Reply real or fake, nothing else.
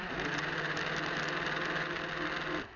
real